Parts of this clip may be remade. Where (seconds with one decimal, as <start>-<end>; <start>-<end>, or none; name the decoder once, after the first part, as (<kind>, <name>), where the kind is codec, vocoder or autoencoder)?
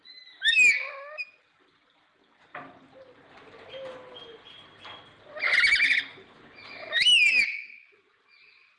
none